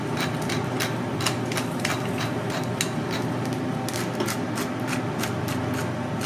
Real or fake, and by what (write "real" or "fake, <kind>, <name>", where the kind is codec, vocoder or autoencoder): real